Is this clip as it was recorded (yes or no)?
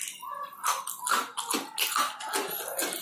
yes